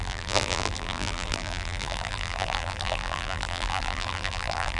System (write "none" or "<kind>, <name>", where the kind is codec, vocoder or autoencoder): vocoder, BigVGAN v2